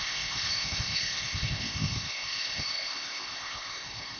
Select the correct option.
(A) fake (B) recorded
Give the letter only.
A